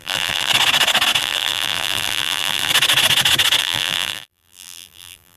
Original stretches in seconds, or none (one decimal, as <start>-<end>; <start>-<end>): 0.5-1.2; 2.7-3.6